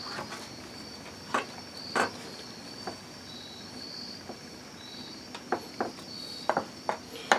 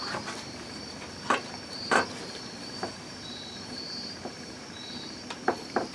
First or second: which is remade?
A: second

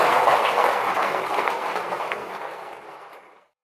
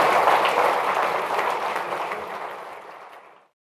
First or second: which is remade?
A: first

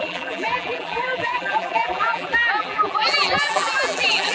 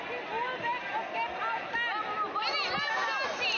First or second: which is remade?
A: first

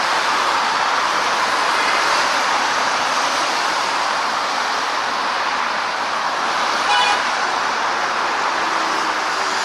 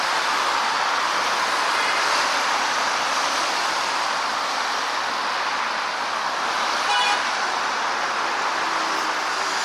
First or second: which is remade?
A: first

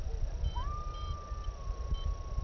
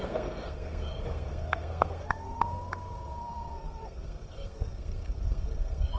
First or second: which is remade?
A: second